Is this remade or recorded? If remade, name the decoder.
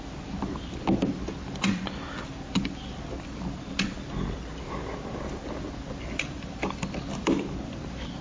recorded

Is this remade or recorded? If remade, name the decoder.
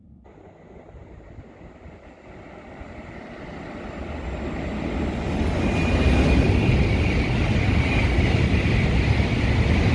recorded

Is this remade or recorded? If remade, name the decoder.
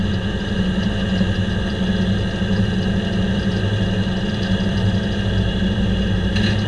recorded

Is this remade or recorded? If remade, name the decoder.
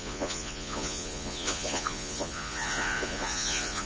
remade, vocoder, Vocos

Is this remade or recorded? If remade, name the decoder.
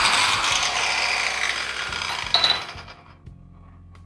recorded